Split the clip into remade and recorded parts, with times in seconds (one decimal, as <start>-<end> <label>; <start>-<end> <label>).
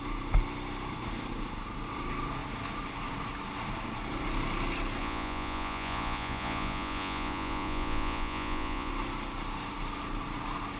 0.0-5.0 recorded; 5.0-8.9 remade; 8.9-10.8 recorded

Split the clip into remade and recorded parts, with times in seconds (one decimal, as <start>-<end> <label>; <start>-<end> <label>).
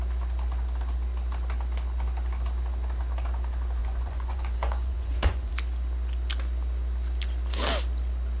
0.0-3.8 recorded; 3.8-5.5 remade; 5.5-8.4 recorded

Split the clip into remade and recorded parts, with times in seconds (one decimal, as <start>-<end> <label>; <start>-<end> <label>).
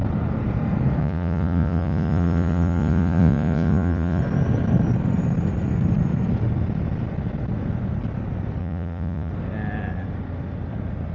0.0-1.0 recorded; 1.0-4.2 remade; 4.2-8.6 recorded; 8.6-9.3 remade; 9.3-11.1 recorded